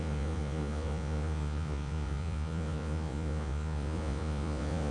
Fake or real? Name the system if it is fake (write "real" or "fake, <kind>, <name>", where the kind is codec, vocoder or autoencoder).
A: fake, vocoder, Vocos